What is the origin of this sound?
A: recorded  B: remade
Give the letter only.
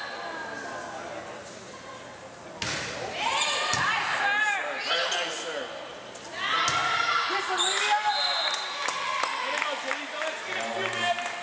A